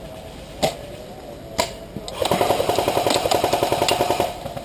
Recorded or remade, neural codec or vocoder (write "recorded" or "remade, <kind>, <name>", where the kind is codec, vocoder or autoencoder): recorded